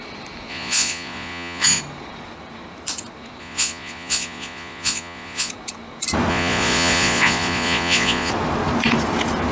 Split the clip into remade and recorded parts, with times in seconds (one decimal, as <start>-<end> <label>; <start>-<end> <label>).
0.0-0.5 recorded; 0.5-1.8 remade; 1.8-3.4 recorded; 3.4-5.5 remade; 5.5-6.3 recorded; 6.3-8.3 remade; 8.3-9.5 recorded